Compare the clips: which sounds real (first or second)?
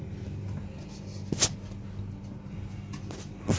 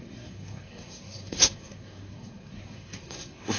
first